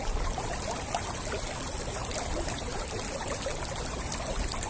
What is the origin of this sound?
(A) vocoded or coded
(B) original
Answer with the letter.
B